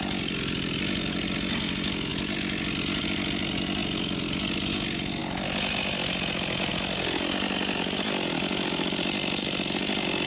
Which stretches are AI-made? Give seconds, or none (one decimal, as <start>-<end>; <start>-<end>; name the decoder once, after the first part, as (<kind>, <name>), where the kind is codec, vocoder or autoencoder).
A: none